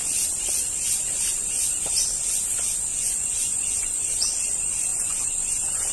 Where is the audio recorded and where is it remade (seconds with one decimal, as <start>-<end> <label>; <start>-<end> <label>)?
0.0-2.9 recorded; 2.9-4.3 remade; 4.3-4.9 recorded; 4.9-5.9 remade